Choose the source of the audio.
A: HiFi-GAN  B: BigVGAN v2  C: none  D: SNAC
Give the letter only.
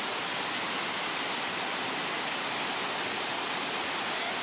C